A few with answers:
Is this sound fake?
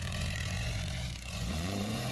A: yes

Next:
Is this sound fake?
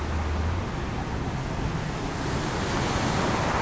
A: no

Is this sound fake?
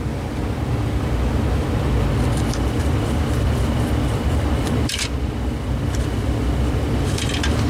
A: no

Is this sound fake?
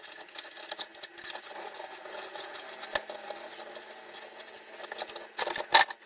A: no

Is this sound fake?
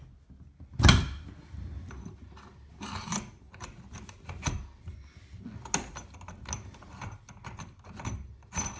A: no